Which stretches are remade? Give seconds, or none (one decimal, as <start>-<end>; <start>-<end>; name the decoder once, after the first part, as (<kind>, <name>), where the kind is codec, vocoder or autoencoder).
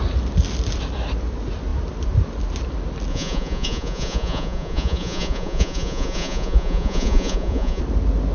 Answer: 3.1-7.8 (vocoder, Vocos)